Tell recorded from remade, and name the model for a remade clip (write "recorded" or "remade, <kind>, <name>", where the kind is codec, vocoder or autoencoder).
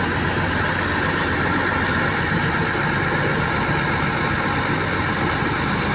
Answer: recorded